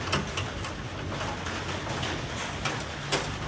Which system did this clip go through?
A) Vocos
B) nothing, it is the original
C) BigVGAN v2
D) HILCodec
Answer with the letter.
B